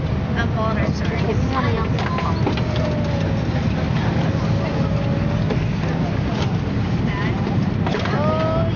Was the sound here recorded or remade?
recorded